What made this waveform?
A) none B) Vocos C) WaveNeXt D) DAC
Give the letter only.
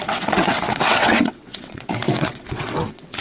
C